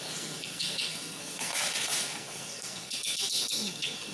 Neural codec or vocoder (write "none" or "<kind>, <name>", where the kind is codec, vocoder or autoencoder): codec, SNAC